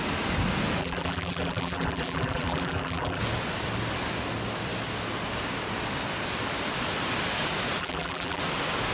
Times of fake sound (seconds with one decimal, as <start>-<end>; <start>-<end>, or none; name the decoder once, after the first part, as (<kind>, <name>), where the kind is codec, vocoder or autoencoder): 0.8-3.2 (vocoder, BigVGAN v2); 7.8-8.4